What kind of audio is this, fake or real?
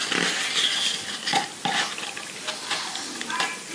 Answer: real